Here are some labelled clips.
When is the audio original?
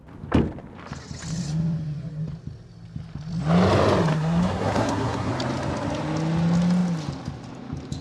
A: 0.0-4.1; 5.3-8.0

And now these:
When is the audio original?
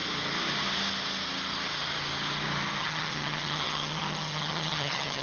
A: 0.0-2.8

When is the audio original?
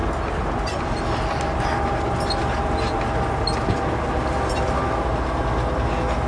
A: 0.0-6.3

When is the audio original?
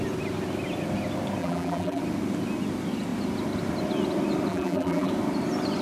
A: 0.0-1.4; 2.0-4.5; 5.1-5.8